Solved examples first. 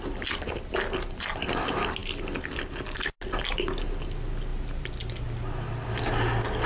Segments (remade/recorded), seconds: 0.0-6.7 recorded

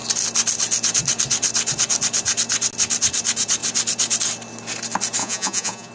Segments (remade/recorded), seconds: 0.0-5.2 recorded; 5.2-5.9 remade

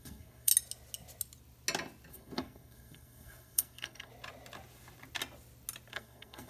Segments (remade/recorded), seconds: 0.0-0.5 remade; 0.5-2.1 recorded; 2.1-4.1 remade; 4.1-5.9 recorded; 5.9-6.5 remade